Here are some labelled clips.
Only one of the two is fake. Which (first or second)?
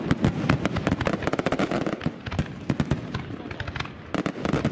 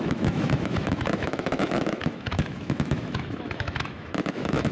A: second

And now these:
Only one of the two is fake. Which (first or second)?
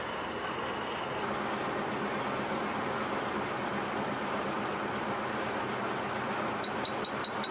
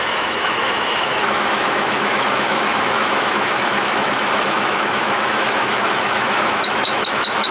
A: second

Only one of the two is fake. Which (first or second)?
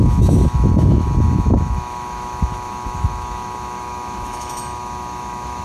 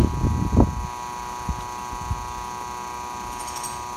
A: first